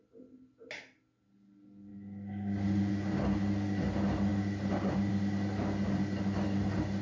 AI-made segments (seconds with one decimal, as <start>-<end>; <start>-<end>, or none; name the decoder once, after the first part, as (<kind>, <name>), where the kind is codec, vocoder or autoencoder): none